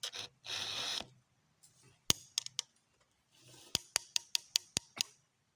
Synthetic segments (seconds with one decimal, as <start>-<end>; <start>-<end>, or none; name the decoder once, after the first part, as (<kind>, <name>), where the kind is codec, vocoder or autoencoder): none

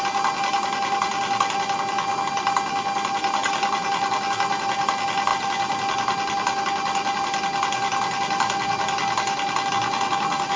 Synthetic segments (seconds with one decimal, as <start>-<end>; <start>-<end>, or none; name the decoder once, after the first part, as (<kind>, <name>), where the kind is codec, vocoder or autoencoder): none

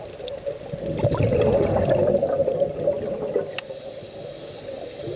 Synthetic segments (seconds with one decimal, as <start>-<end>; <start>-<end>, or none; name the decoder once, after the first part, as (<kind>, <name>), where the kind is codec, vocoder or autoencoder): none

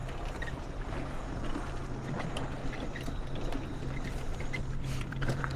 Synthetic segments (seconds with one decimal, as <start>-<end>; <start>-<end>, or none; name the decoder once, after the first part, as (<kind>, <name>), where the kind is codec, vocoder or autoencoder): 2.6-5.6 (vocoder, BigVGAN v2)